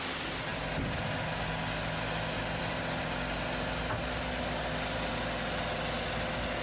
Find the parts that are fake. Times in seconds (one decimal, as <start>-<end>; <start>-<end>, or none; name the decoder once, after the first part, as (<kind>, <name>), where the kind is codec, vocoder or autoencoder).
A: none